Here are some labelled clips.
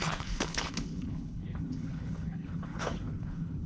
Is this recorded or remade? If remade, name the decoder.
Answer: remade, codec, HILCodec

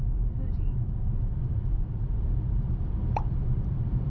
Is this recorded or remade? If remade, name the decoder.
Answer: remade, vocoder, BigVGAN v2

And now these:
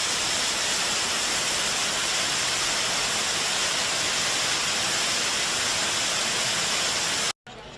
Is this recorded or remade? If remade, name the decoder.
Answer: recorded